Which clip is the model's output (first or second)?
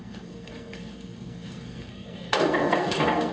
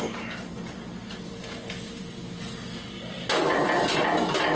first